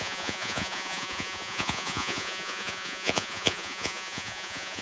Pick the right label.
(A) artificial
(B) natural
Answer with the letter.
A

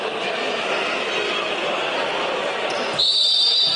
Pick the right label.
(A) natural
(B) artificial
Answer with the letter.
A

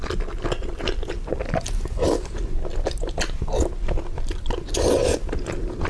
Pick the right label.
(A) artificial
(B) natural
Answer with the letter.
B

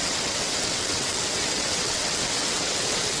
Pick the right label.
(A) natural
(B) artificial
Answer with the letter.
B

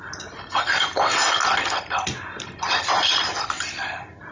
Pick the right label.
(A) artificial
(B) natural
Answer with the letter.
B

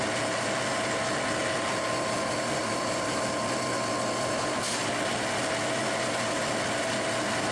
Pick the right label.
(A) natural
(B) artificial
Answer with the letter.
A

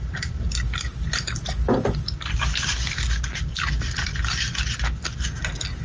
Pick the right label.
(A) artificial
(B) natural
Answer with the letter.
B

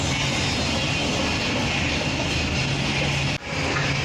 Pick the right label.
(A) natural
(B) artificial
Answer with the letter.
A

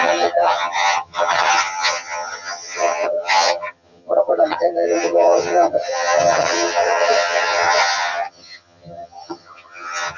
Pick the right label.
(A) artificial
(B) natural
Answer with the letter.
A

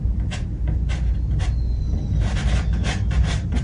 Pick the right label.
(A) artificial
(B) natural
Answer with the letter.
B